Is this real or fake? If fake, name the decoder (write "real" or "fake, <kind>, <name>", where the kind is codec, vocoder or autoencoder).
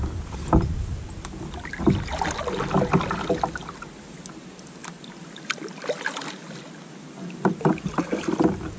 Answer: real